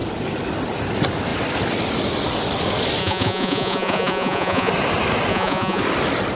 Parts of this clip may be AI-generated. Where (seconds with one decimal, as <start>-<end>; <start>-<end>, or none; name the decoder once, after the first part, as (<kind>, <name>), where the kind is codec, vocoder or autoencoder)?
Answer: 3.0-4.7 (vocoder, Vocos); 5.3-5.8